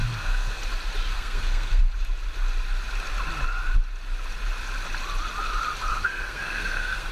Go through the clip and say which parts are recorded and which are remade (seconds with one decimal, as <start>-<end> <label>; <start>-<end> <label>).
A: 0.0-0.6 remade; 0.6-1.1 recorded; 1.1-1.9 remade; 1.9-5.9 recorded; 5.9-7.1 remade